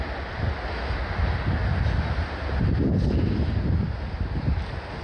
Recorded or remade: recorded